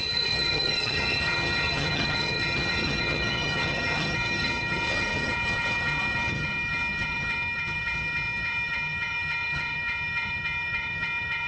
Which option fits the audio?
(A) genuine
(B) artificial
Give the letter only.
B